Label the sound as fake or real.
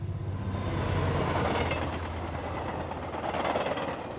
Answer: real